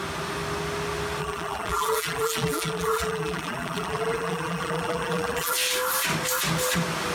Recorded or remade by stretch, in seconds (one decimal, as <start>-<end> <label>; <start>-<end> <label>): 0.0-1.2 recorded; 1.2-5.5 remade; 5.5-7.1 recorded

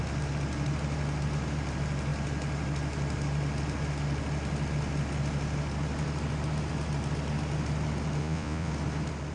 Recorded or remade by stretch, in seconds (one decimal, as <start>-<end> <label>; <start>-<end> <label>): 0.0-8.2 recorded; 8.2-8.7 remade; 8.7-9.3 recorded

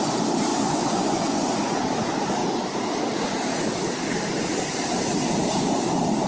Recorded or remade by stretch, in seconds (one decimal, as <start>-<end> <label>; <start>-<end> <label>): 0.0-0.5 recorded; 0.5-1.8 remade; 1.8-6.3 recorded

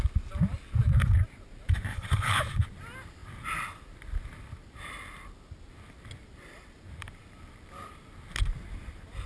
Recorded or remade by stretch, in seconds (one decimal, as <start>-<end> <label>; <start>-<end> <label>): 0.0-1.9 recorded; 1.9-2.4 remade; 2.4-9.3 recorded

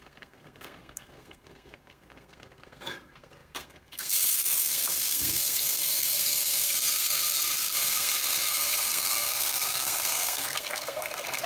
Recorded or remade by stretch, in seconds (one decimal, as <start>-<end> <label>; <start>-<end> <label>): 0.0-11.5 remade

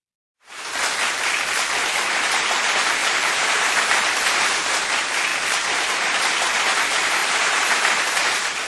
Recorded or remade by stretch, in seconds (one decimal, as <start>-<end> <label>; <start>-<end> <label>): 0.0-3.0 recorded; 3.0-3.7 remade; 3.7-7.2 recorded; 7.2-8.0 remade; 8.0-8.7 recorded